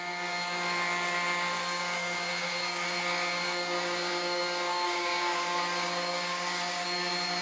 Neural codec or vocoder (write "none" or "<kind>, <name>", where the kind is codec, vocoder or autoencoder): codec, DAC